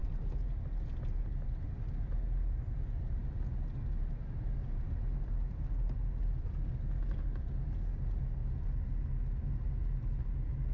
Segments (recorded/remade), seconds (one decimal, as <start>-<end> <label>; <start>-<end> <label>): 0.0-10.7 recorded